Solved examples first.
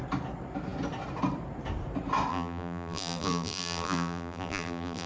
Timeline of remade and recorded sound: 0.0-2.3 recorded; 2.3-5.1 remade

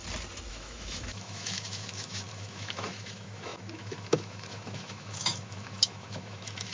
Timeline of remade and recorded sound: 0.0-0.5 recorded; 0.5-6.7 remade

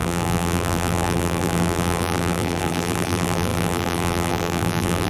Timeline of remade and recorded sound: 0.0-5.1 remade